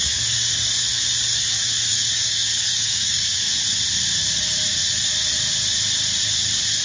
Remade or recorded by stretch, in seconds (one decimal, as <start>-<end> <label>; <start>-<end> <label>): 0.0-0.7 remade; 0.7-1.9 recorded; 1.9-3.4 remade; 3.4-6.8 recorded